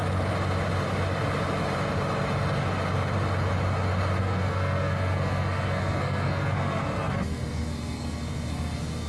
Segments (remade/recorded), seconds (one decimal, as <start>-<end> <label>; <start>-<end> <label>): 0.0-4.2 recorded; 4.2-9.1 remade